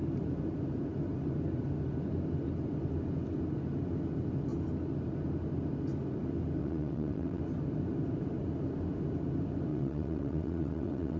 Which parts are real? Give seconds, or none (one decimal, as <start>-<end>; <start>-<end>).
0.0-6.6; 7.4-9.7